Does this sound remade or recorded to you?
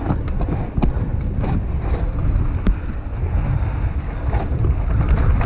recorded